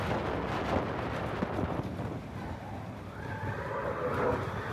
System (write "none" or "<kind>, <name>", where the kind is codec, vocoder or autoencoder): none